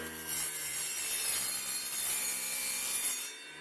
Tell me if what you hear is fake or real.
real